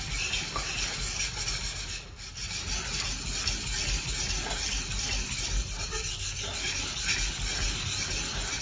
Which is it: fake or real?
real